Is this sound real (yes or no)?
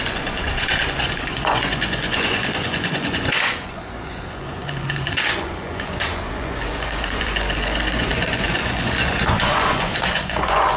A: no